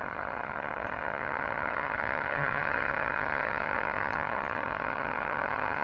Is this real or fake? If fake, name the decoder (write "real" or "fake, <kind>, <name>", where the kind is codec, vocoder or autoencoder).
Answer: fake, vocoder, HiFi-GAN